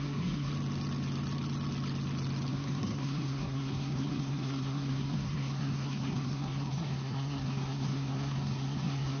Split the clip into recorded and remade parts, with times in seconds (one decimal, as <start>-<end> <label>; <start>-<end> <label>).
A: 0.0-0.5 remade; 0.5-2.5 recorded; 2.5-9.2 remade